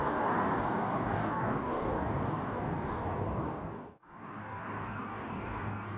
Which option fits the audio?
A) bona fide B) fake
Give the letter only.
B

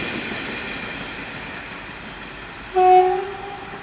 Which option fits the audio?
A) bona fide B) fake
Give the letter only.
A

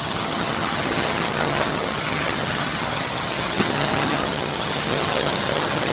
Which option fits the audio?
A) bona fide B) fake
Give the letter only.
B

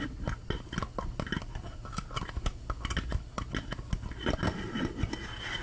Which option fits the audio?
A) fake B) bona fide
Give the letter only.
B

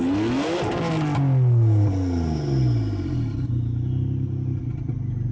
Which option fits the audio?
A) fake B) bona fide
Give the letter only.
B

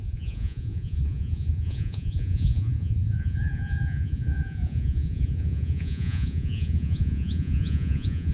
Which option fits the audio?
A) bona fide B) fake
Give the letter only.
B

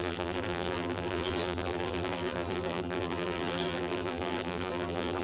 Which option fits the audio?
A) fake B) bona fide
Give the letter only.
A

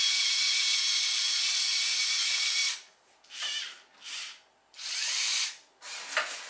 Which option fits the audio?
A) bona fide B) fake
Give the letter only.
A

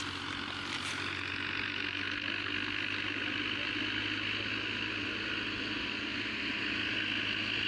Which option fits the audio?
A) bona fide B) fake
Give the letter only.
A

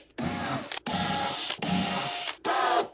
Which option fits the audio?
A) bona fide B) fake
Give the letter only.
A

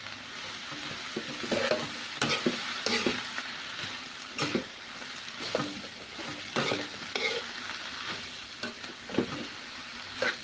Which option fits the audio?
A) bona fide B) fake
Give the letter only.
A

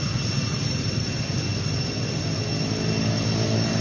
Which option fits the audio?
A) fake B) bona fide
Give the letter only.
B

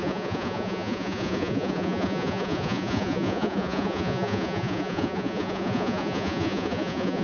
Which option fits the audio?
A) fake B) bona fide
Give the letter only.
A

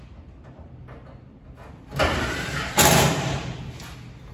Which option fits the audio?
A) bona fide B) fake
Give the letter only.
A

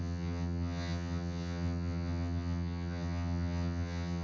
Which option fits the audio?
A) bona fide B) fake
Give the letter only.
B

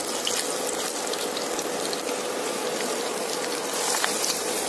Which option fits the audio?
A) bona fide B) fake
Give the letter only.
A